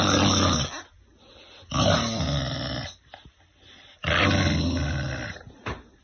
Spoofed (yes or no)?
no